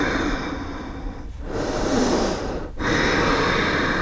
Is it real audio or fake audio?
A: real